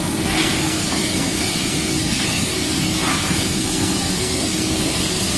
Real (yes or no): no